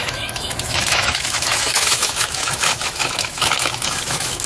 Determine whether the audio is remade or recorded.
remade